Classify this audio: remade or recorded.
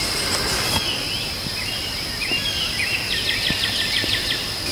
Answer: recorded